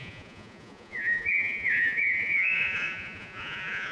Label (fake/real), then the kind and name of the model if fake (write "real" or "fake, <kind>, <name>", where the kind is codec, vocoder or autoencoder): fake, vocoder, Vocos